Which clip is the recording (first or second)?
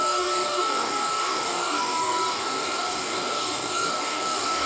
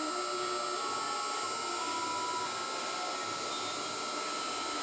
second